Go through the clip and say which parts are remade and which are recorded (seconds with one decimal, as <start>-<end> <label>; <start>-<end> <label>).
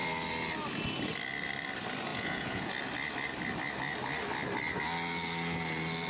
0.0-2.1 recorded; 2.1-2.7 remade; 2.7-6.1 recorded